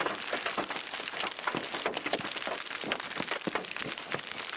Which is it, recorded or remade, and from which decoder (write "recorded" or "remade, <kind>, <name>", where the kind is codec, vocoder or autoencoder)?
recorded